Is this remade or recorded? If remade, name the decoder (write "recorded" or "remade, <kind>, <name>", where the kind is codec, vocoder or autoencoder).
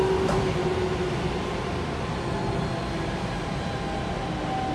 recorded